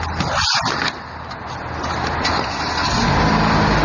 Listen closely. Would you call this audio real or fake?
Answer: real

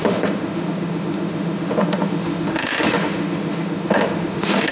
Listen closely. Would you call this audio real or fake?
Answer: fake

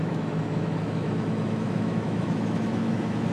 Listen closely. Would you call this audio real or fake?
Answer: fake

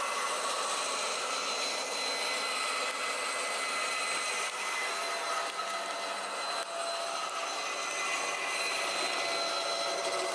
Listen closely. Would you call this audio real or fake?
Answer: real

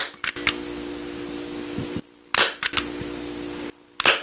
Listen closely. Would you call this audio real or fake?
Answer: real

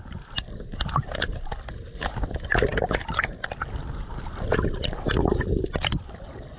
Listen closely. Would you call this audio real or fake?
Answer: real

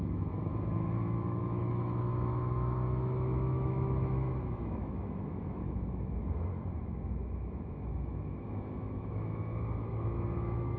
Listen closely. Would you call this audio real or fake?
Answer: fake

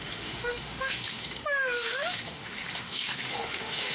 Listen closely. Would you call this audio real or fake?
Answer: fake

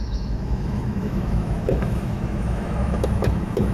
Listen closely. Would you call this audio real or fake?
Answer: fake